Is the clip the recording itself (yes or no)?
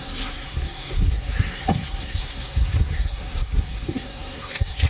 no